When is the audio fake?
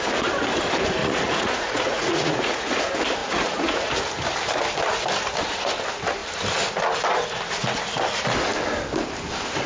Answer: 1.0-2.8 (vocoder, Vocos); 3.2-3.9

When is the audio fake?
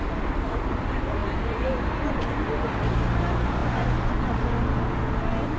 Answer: none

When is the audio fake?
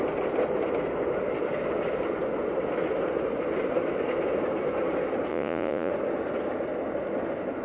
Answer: 5.3-5.9 (vocoder, Vocos)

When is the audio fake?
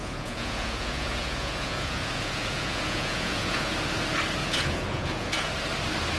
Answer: 0.0-3.7 (vocoder, Vocos); 4.4-5.5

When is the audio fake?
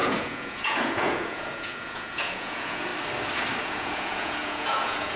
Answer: 0.0-2.9 (vocoder, Vocos); 3.6-5.2